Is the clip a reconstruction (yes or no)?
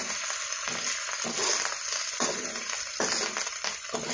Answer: no